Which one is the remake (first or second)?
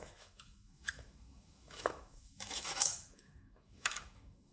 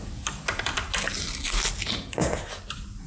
first